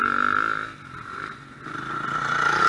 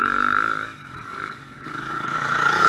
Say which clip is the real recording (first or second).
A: first